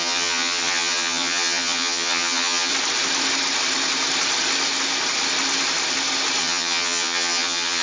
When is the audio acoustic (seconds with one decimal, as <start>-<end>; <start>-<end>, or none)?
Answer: 2.7-6.4

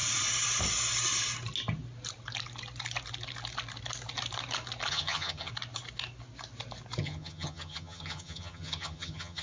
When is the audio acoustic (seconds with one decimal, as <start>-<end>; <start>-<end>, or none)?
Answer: 0.0-4.9; 5.5-7.0

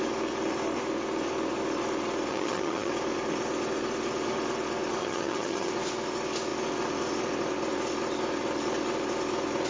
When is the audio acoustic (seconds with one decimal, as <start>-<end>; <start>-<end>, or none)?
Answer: 0.0-2.3; 2.9-5.0; 5.7-9.7

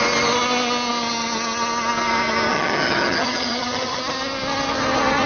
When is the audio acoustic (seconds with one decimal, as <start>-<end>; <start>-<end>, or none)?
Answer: 0.0-2.5; 4.0-5.3

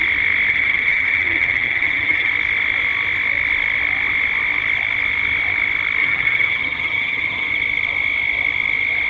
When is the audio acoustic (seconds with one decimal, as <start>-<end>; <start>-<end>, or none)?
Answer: 0.0-0.5; 2.3-6.0; 7.5-9.1